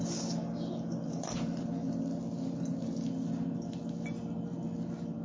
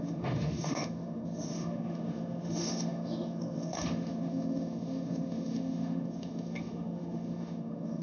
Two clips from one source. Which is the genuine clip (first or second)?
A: first